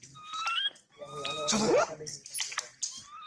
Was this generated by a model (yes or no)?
no